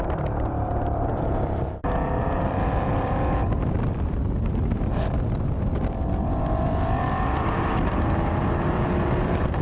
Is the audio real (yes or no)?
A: no